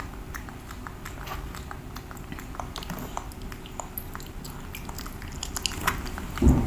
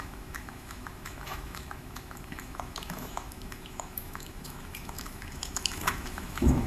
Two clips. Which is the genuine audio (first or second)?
first